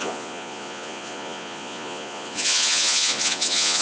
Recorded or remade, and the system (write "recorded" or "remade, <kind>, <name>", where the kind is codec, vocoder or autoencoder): remade, vocoder, Vocos